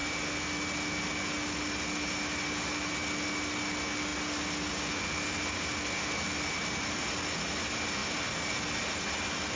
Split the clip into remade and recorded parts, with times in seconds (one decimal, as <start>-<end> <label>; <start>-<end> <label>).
0.0-9.6 recorded